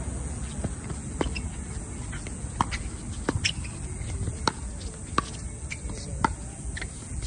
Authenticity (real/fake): real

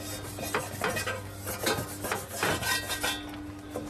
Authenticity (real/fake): real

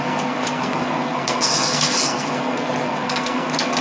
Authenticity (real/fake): fake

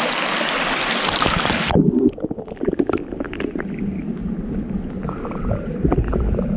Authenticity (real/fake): real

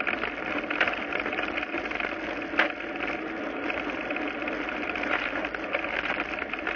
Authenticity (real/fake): real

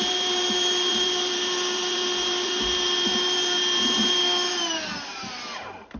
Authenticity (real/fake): fake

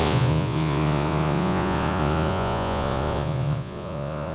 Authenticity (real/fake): fake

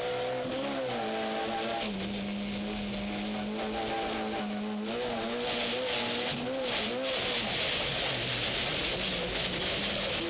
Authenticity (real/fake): real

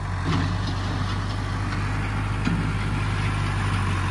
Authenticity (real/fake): real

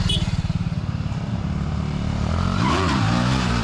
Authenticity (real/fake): fake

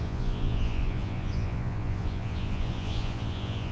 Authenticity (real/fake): fake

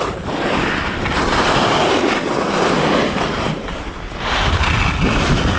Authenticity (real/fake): real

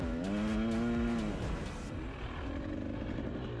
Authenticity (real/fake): real